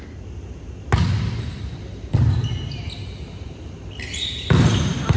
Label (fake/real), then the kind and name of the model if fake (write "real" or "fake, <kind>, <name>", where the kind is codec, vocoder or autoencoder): real